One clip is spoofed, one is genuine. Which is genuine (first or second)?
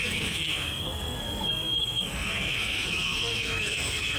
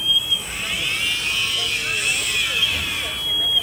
second